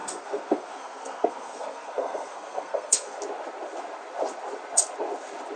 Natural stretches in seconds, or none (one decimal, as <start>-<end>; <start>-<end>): 3.2-5.6